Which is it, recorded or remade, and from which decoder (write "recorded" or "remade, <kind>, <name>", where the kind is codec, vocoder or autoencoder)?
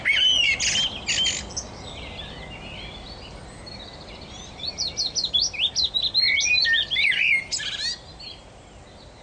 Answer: recorded